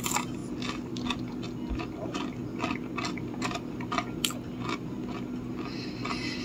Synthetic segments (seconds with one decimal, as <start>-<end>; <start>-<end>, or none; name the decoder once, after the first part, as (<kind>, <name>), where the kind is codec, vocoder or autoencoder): none